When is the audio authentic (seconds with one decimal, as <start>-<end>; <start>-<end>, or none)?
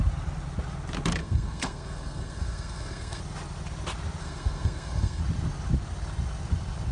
0.0-1.2; 3.2-4.2; 5.2-6.9